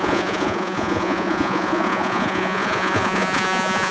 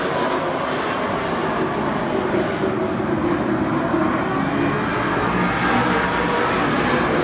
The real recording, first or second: second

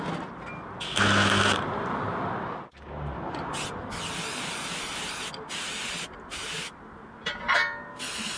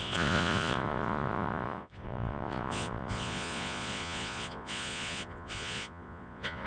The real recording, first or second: first